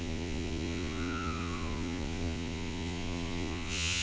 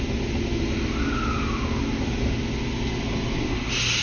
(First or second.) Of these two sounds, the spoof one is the first